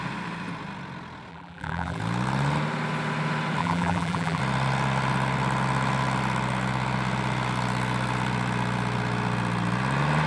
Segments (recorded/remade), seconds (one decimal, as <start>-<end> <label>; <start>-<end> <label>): 0.0-1.3 recorded; 1.3-2.0 remade; 2.0-3.6 recorded; 3.6-4.4 remade; 4.4-10.3 recorded